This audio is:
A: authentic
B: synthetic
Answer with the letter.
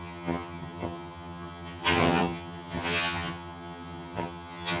B